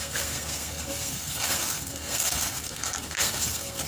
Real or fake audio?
fake